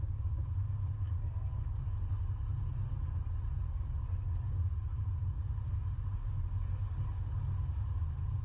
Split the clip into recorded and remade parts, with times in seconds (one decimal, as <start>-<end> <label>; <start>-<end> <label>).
0.0-8.4 recorded

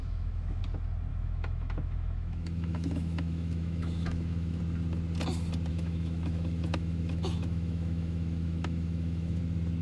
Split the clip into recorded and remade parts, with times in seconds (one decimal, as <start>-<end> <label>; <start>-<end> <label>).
0.0-0.6 remade; 0.6-1.1 recorded; 1.1-4.6 remade; 4.6-5.7 recorded; 5.7-9.4 remade; 9.4-9.8 recorded

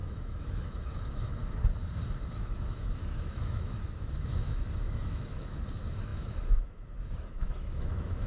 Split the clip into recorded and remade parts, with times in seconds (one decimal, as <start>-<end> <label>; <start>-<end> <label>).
0.0-1.4 remade; 1.4-2.3 recorded; 2.3-8.3 remade

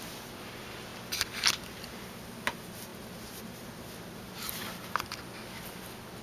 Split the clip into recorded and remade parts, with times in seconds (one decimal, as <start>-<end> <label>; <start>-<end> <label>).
0.0-6.2 recorded

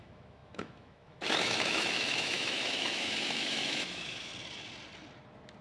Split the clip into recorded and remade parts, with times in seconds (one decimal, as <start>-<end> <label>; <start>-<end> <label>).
0.0-4.3 remade; 4.3-5.6 recorded